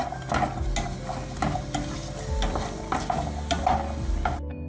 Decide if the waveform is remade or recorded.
recorded